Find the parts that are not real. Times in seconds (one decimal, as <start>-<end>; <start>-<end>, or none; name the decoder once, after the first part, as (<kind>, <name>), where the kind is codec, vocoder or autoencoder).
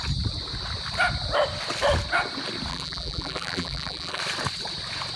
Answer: 2.7-4.2 (vocoder, BigVGAN v2)